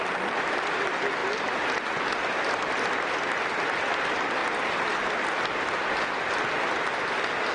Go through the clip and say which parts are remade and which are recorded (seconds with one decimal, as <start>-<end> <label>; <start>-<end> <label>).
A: 0.0-7.5 recorded